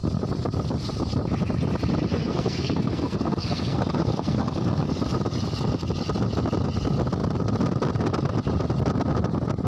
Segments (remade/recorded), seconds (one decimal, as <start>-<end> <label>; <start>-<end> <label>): 0.0-2.1 recorded; 2.1-4.9 remade; 4.9-9.7 recorded